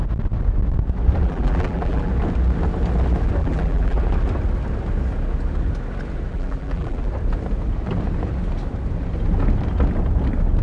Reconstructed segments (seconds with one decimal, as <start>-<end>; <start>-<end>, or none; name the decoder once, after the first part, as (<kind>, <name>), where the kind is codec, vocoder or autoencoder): 1.2-2.1 (vocoder, BigVGAN v2); 3.4-4.0; 6.3-7.1